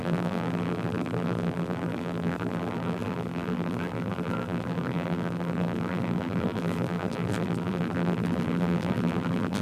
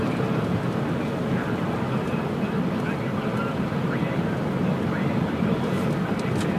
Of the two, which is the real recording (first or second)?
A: second